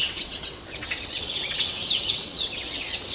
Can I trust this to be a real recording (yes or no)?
no